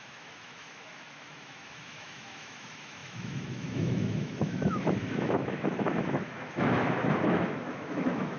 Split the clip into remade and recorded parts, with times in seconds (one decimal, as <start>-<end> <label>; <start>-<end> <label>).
0.0-8.4 remade